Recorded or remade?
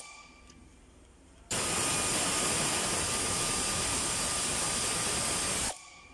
recorded